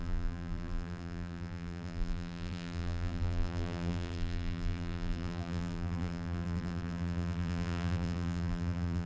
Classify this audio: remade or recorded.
remade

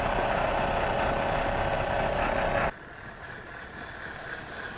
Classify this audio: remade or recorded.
recorded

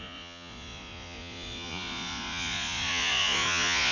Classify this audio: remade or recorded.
remade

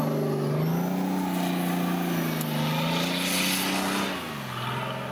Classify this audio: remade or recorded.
recorded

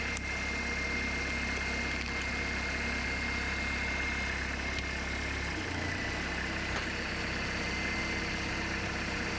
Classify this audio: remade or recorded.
recorded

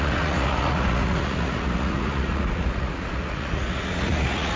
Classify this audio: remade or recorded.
remade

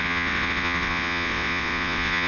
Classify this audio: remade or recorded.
remade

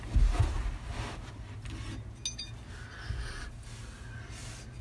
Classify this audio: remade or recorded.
recorded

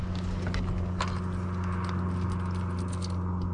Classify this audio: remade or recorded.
recorded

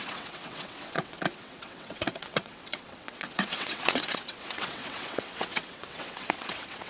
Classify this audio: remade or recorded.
remade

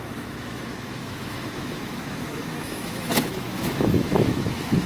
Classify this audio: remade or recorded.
remade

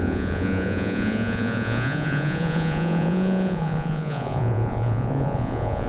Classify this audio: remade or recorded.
remade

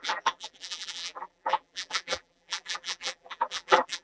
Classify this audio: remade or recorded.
remade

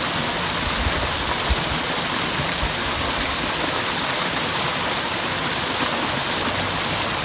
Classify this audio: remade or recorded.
recorded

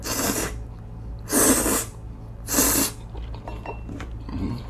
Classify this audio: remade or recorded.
recorded